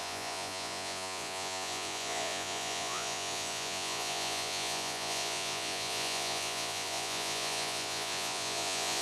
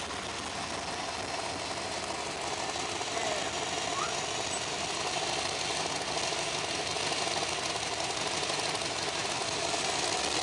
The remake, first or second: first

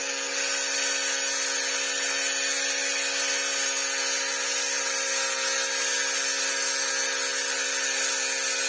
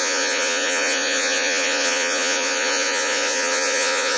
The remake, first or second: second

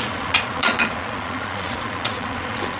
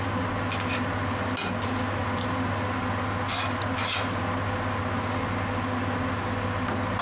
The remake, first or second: first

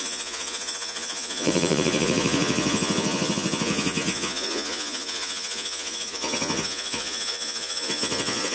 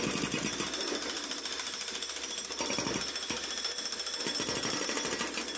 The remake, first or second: first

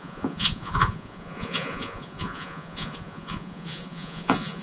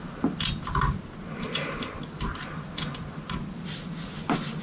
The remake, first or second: first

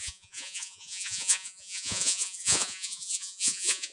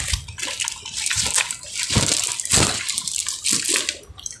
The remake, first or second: first